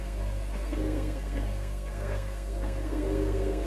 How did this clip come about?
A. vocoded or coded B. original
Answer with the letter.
A